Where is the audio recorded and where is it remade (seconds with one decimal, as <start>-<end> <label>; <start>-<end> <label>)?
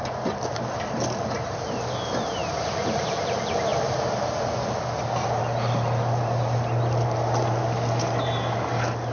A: 0.0-9.1 recorded